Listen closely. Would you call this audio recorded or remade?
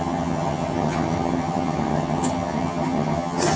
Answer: remade